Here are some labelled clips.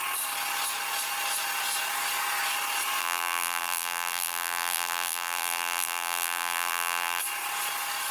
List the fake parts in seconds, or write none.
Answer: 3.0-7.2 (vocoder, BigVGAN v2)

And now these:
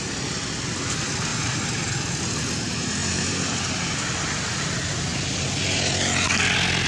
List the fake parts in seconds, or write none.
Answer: 1.3-2.5 (vocoder, BigVGAN v2); 3.0-3.9

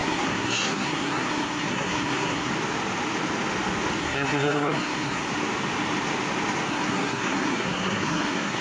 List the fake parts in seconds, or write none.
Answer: 0.0-2.5 (codec, SNAC); 4.0-5.3; 6.7-8.6

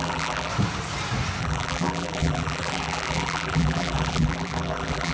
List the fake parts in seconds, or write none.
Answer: 0.0-0.5 (vocoder, BigVGAN v2); 1.4-5.1

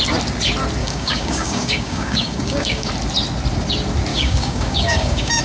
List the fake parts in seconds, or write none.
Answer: 0.8-2.9 (codec, DAC); 4.1-5.4

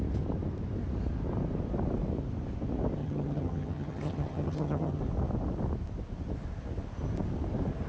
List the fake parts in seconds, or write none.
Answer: 3.0-5.0 (vocoder, HiFi-GAN)

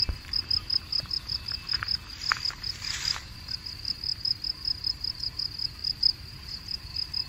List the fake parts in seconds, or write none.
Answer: 4.1-5.1 (vocoder, BigVGAN v2); 5.8-6.8